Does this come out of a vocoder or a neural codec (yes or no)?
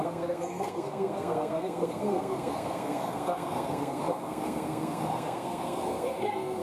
yes